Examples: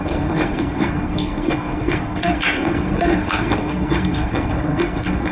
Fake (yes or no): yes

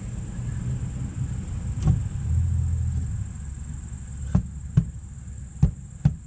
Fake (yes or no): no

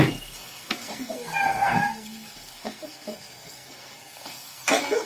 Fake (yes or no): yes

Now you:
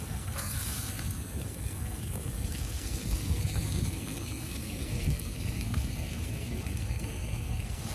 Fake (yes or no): yes